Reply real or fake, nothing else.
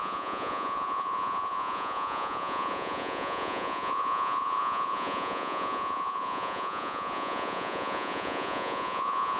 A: fake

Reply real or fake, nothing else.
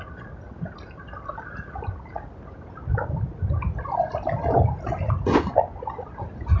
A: real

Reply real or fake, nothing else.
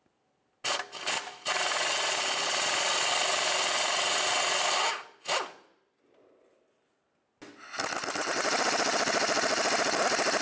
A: real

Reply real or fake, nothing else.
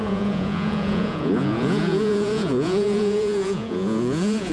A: fake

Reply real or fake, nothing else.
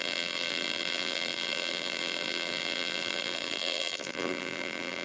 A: fake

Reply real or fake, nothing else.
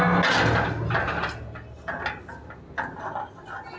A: real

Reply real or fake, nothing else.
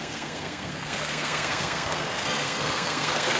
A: fake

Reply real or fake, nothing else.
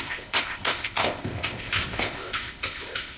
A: fake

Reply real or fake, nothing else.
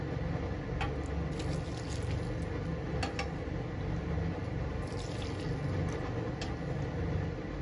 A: real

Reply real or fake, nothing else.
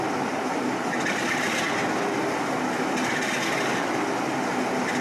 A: real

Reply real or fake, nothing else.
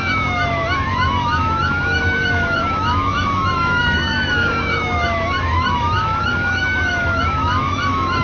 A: fake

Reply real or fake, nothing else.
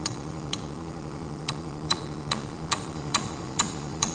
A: fake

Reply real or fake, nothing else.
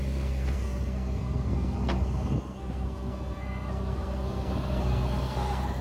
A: fake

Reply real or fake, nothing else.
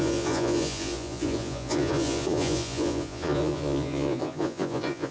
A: fake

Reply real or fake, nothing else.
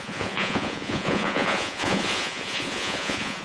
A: fake